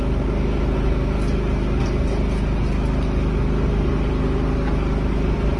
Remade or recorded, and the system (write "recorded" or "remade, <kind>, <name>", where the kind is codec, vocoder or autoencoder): recorded